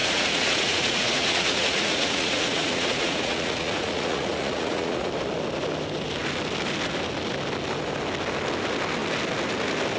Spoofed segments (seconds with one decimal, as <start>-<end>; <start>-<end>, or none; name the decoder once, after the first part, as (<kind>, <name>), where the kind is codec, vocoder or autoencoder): 0.0-5.1 (vocoder, Vocos)